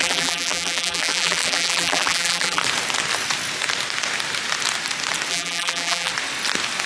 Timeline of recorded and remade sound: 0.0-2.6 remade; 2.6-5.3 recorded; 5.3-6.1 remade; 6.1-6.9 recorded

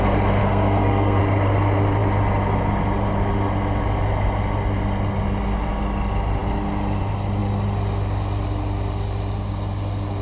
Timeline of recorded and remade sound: 0.0-0.4 recorded; 0.4-1.2 remade; 1.2-10.2 recorded

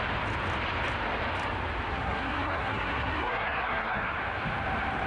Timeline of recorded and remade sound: 0.0-1.9 recorded; 1.9-4.2 remade; 4.2-5.1 recorded

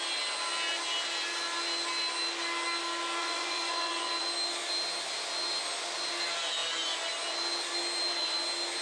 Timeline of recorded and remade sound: 0.0-3.2 recorded; 3.2-4.1 remade; 4.1-8.8 recorded

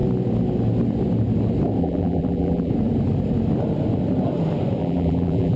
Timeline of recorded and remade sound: 0.0-1.8 recorded; 1.8-2.7 remade; 2.7-4.8 recorded; 4.8-5.6 remade

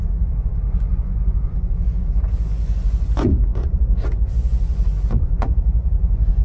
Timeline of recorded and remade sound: 0.0-6.4 remade

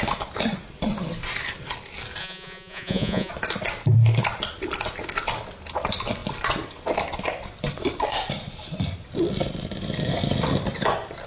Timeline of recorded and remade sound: 0.0-2.2 recorded; 2.2-3.3 remade; 3.3-11.3 recorded